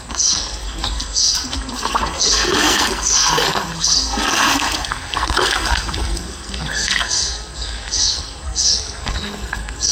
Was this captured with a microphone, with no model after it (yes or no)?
no